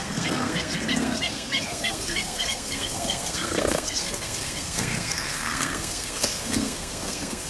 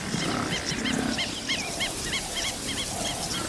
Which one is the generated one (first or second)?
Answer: first